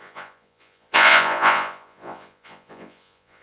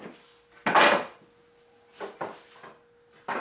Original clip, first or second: second